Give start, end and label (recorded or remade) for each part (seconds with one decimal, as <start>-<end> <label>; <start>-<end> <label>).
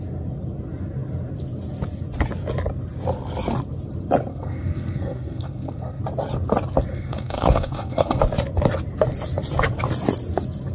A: 0.0-4.3 recorded; 4.3-6.0 remade; 6.0-6.9 recorded; 6.9-8.2 remade; 8.2-10.7 recorded